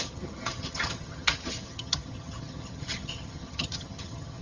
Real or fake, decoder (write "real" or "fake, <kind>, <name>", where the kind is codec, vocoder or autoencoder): fake, vocoder, HiFi-GAN